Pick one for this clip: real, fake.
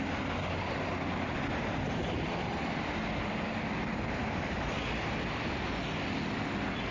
real